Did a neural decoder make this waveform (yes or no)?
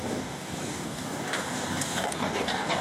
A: yes